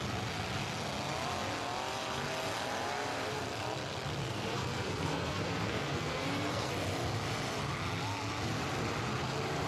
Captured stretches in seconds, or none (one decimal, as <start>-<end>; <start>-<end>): 0.0-4.2; 6.7-9.7